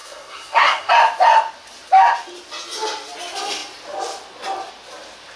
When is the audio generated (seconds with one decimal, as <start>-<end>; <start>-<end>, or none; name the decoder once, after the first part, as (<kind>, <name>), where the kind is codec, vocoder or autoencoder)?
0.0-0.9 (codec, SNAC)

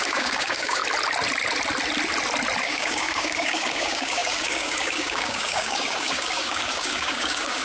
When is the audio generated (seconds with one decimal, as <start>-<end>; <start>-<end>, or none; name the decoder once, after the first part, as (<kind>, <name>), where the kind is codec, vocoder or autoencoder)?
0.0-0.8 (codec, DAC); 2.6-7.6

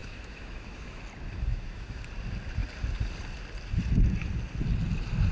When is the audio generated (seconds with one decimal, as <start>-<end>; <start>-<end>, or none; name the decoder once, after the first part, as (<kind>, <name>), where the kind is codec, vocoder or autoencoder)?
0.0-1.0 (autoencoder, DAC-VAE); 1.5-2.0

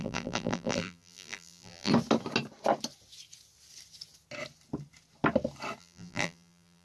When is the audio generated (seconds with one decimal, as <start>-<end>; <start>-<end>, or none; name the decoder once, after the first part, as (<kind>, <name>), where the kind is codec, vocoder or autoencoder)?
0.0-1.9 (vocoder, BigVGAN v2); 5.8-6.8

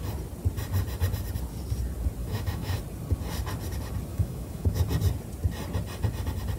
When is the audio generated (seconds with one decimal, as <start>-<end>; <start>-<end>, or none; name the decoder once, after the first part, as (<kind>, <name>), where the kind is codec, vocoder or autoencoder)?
2.2-2.8 (autoencoder, DAC-VAE); 4.1-4.8

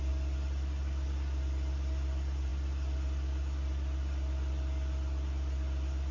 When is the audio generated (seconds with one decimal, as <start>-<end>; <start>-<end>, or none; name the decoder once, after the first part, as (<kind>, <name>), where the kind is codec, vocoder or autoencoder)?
none

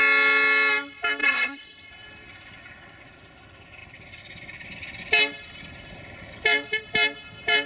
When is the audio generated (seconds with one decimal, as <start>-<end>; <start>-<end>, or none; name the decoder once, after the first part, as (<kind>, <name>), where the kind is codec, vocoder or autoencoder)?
1.2-1.9 (codec, SNAC)

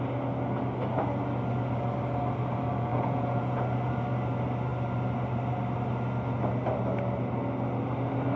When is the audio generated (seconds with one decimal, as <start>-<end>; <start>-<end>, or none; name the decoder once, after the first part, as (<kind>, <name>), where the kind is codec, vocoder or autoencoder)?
2.9-3.6 (vocoder, Vocos)